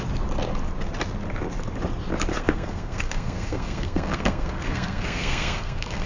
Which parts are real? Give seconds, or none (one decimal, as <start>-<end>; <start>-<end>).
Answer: 0.0-2.3